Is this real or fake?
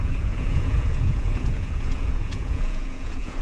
fake